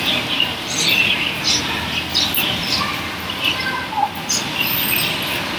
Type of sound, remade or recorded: recorded